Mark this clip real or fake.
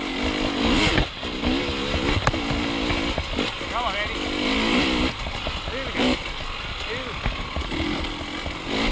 real